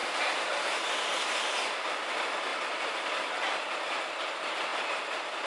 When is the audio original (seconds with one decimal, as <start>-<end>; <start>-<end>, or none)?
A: 0.0-5.5